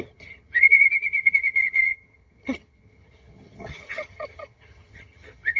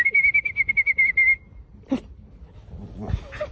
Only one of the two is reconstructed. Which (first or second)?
first